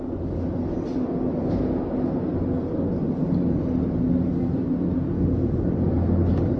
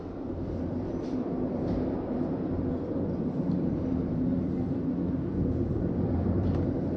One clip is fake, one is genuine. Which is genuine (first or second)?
first